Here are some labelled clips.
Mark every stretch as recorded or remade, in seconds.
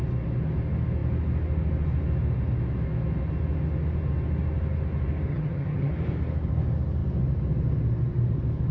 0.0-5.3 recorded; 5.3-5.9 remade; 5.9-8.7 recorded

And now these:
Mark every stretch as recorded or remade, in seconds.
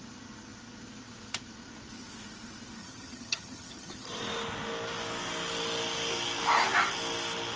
0.0-2.8 recorded; 2.8-4.2 remade; 4.2-7.6 recorded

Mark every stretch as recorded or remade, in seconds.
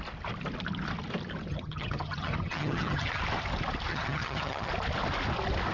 0.0-1.5 recorded; 1.5-3.2 remade; 3.2-3.9 recorded; 3.9-4.7 remade; 4.7-5.7 recorded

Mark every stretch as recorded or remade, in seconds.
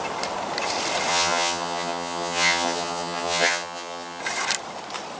0.0-1.1 recorded; 1.1-4.2 remade; 4.2-5.2 recorded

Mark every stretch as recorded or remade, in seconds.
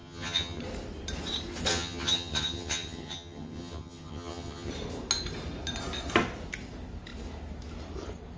0.0-0.6 remade; 0.6-1.7 recorded; 1.7-4.7 remade; 4.7-8.4 recorded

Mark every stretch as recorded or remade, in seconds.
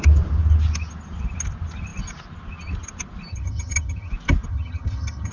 0.0-3.3 recorded; 3.3-4.1 remade; 4.1-4.5 recorded; 4.5-5.3 remade